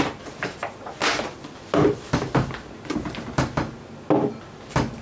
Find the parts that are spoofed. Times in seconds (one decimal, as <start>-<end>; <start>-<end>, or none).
none